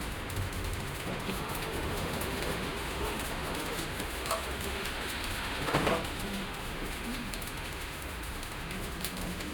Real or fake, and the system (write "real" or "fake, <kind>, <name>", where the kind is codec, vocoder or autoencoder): fake, autoencoder, DAC-VAE